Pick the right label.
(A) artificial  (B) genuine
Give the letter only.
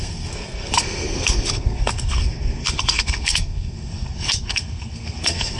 A